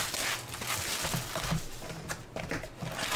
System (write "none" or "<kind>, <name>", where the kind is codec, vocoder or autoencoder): none